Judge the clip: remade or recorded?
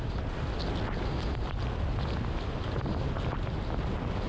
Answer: recorded